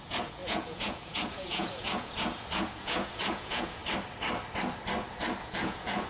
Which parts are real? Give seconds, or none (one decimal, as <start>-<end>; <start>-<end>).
3.8-5.4